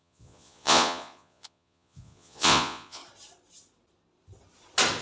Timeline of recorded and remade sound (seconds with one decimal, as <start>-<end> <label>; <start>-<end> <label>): 0.0-3.0 remade; 3.0-5.0 recorded